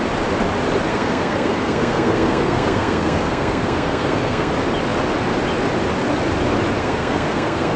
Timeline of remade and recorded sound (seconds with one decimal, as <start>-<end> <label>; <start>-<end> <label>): 0.0-0.9 recorded; 0.9-4.5 remade; 4.5-6.8 recorded; 6.8-7.8 remade